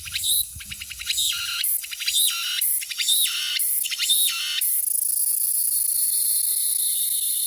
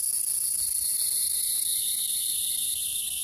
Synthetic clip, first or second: second